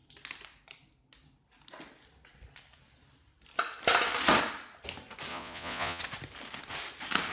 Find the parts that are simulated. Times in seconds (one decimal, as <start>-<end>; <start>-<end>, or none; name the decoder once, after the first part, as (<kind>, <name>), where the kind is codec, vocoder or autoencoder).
5.3-6.0 (vocoder, Vocos)